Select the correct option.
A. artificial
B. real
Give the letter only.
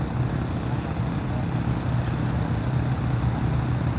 B